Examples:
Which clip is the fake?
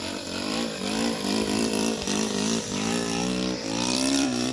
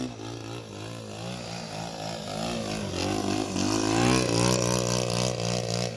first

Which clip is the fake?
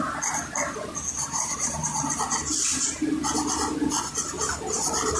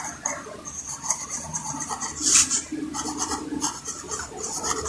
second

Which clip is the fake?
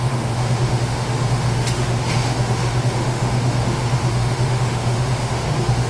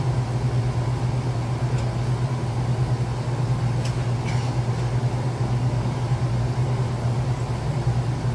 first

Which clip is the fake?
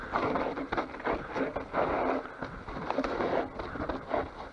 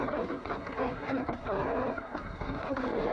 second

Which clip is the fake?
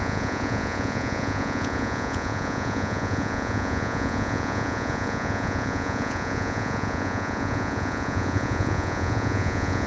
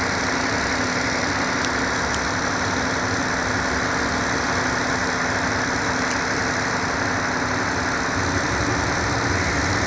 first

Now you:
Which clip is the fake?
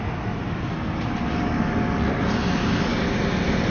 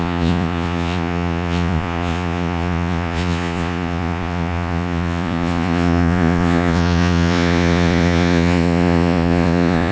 second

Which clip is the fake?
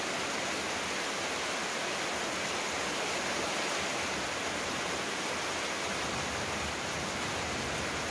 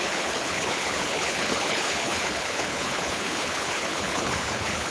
second